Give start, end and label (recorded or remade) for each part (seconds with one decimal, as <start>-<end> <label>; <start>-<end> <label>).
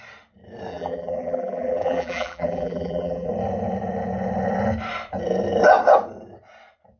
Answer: 0.0-0.7 recorded; 0.7-3.3 remade; 3.3-7.0 recorded